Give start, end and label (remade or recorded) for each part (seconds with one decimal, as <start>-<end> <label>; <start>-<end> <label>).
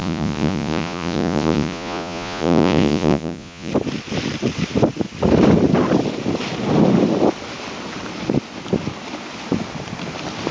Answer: 0.0-3.7 remade; 3.7-10.5 recorded